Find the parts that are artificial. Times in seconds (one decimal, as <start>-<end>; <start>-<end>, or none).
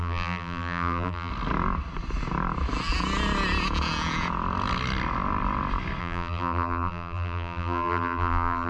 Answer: 0.0-1.3; 6.0-8.7